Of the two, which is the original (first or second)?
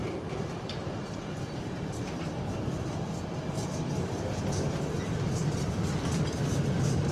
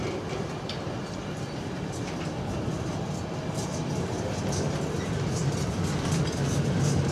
second